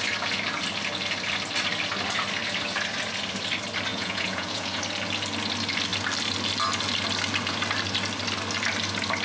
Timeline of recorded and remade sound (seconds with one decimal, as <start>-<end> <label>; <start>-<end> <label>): 0.0-3.9 recorded; 3.9-4.8 remade; 4.8-9.2 recorded